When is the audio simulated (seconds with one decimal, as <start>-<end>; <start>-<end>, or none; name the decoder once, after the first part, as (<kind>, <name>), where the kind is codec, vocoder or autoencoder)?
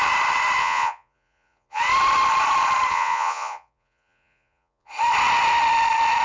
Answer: 0.6-1.8 (vocoder, Vocos); 2.9-4.9